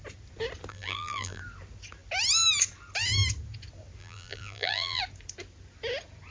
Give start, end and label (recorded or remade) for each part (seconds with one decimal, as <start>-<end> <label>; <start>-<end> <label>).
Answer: 0.0-0.7 recorded; 0.7-1.4 remade; 1.4-4.0 recorded; 4.0-5.0 remade; 5.0-6.3 recorded